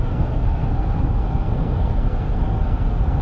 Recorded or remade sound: remade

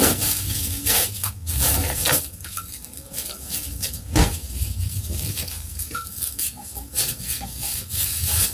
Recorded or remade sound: remade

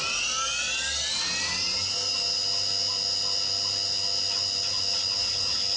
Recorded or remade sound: recorded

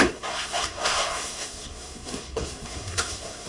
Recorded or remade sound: remade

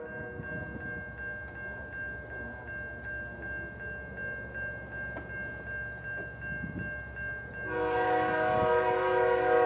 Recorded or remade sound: recorded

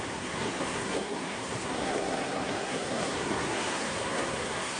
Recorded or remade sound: remade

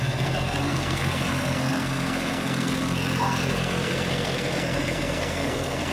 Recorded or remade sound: remade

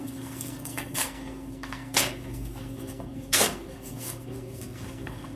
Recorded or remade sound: remade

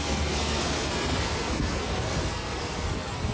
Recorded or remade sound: remade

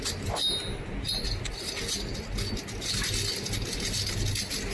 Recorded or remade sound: recorded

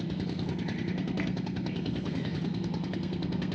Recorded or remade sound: remade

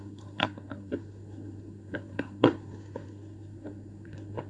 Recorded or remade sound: remade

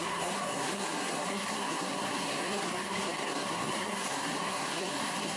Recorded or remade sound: remade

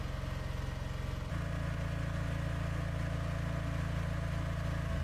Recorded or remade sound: recorded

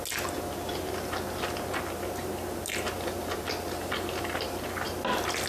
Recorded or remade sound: recorded